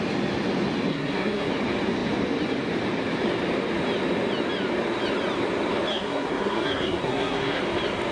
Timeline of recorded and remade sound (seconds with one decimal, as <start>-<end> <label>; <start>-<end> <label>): 0.0-0.9 recorded; 0.9-1.5 remade; 1.5-5.9 recorded; 5.9-7.6 remade; 7.6-8.1 recorded

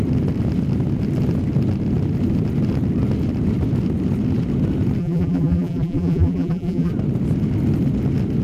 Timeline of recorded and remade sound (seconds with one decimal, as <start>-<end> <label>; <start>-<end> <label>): 0.0-5.0 recorded; 5.0-6.9 remade; 6.9-8.4 recorded

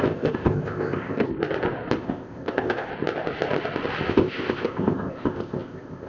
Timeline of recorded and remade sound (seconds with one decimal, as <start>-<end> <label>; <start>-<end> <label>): 0.0-1.3 remade; 1.3-2.0 recorded; 2.0-2.9 remade; 2.9-4.1 recorded; 4.1-6.1 remade